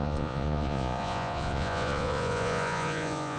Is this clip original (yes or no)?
no